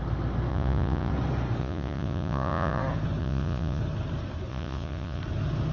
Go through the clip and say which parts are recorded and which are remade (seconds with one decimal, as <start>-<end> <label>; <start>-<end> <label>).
0.0-0.5 recorded; 0.5-1.1 remade; 1.1-1.6 recorded; 1.6-2.8 remade; 2.8-3.2 recorded; 3.2-3.8 remade; 3.8-4.5 recorded; 4.5-5.2 remade; 5.2-5.7 recorded